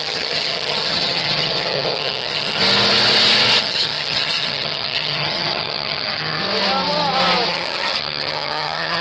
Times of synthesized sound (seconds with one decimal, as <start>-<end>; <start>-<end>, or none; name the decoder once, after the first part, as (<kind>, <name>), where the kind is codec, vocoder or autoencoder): 0.0-2.6 (vocoder, HiFi-GAN); 3.6-6.4; 7.5-9.0